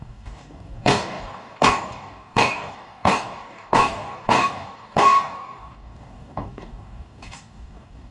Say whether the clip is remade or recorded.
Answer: remade